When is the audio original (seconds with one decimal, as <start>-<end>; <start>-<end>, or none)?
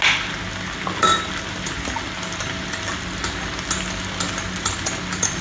0.0-5.4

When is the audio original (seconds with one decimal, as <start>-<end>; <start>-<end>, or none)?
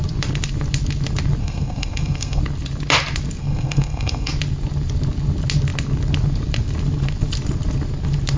0.0-1.4; 2.4-3.4; 4.3-8.4